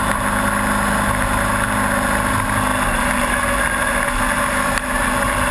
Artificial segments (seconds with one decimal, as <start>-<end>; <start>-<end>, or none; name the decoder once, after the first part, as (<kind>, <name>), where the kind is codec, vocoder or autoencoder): none